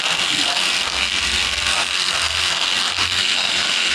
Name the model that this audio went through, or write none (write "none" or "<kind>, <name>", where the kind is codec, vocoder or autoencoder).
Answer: codec, SNAC